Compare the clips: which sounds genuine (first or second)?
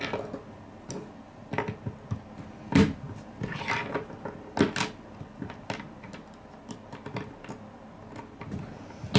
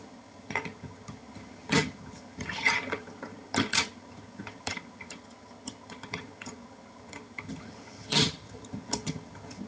first